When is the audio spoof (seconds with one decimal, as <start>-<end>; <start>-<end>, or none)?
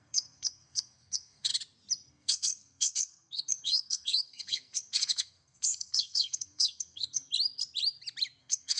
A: 0.0-1.5; 2.1-7.3; 8.4-8.8